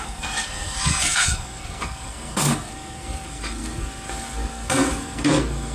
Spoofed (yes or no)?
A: yes